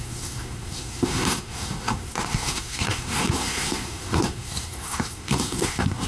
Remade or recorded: remade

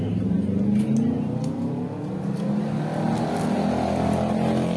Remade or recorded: recorded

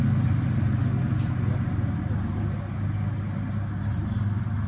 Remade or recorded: remade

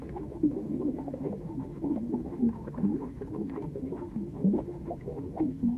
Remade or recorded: remade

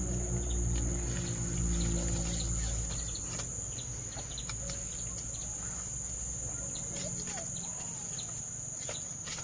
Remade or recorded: recorded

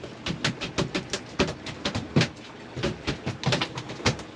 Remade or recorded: recorded